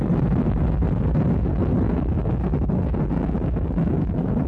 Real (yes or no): yes